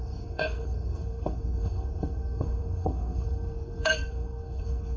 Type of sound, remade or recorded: remade